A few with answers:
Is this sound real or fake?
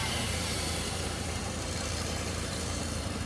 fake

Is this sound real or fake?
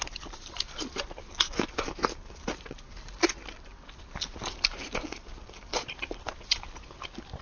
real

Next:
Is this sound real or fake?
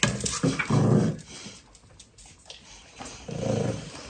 real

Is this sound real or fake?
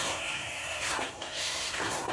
fake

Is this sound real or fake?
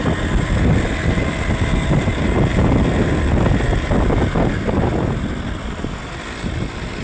real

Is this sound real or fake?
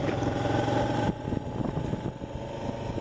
real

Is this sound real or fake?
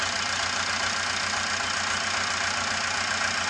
real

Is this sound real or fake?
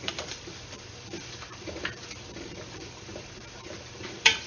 fake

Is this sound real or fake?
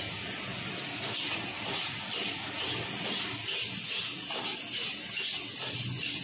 real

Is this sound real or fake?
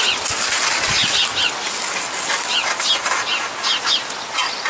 real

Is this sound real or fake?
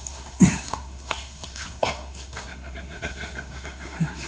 fake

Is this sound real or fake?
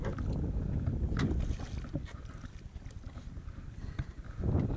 real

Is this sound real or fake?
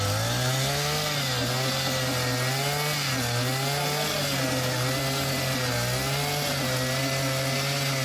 real